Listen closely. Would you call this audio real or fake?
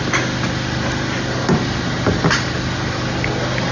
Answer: real